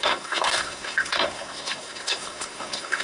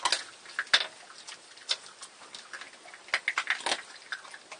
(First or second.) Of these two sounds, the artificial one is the first